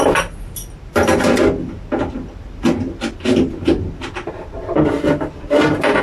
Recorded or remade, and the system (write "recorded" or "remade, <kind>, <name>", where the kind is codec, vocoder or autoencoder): recorded